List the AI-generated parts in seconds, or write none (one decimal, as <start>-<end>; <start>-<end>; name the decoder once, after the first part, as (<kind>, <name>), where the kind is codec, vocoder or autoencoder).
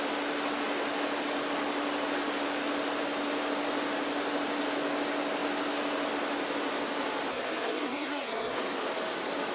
7.3-8.6 (codec, SNAC)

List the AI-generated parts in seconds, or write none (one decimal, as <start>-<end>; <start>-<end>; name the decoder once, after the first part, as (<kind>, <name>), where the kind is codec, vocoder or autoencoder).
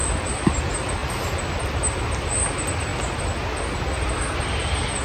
0.0-0.6 (vocoder, BigVGAN v2); 1.0-1.6